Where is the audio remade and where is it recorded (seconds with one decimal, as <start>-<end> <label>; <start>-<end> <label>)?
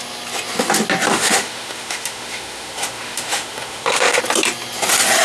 0.0-1.1 recorded; 1.1-4.2 remade; 4.2-5.2 recorded